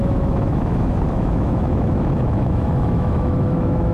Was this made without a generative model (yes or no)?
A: no